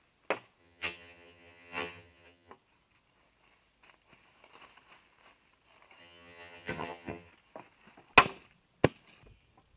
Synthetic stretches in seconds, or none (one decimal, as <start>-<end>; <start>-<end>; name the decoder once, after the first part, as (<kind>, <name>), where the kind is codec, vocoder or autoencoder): 0.6-2.5 (vocoder, HiFi-GAN); 6.0-7.3